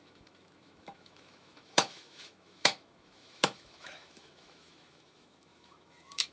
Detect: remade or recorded remade